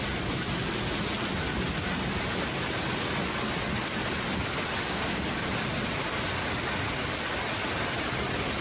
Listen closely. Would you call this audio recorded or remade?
recorded